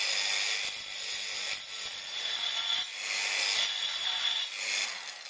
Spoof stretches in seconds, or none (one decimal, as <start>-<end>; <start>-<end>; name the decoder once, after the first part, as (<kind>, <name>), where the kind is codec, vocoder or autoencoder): none

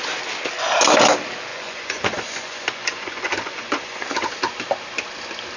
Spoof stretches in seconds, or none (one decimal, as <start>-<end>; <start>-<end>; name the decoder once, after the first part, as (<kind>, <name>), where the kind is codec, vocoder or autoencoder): 1.5-4.3 (vocoder, Vocos)

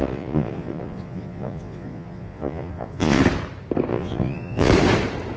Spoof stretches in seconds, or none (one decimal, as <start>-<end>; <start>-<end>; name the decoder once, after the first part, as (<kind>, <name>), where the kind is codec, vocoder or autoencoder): 0.0-3.2 (vocoder, Vocos); 3.9-4.7